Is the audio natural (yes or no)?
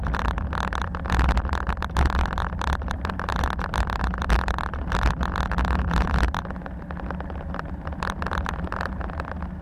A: yes